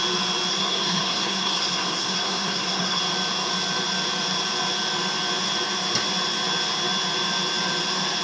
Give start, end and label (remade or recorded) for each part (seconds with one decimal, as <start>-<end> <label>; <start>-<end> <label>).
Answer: 0.0-0.5 recorded; 0.5-3.0 remade; 3.0-8.2 recorded